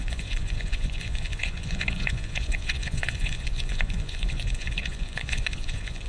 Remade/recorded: remade